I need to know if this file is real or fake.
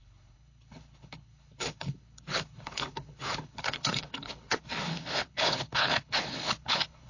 fake